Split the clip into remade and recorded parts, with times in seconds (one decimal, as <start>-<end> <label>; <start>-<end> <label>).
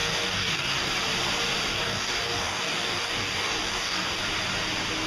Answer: 0.0-0.9 remade; 0.9-1.7 recorded; 1.7-4.2 remade; 4.2-5.1 recorded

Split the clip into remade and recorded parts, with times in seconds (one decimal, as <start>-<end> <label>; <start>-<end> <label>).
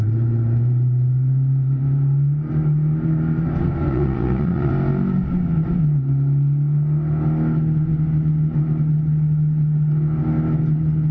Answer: 0.0-3.8 recorded; 3.8-4.7 remade; 4.7-11.1 recorded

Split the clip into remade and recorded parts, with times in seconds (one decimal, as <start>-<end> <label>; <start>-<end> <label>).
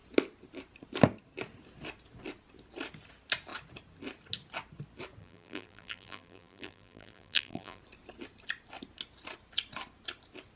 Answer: 0.0-5.2 recorded; 5.2-7.8 remade; 7.8-10.6 recorded